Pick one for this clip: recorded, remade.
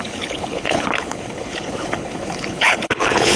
remade